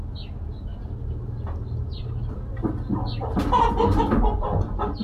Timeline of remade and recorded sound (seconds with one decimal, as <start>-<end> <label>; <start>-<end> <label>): 0.0-5.0 recorded